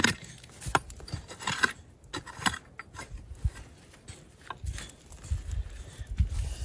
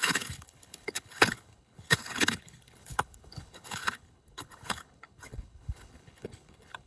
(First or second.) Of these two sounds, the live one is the first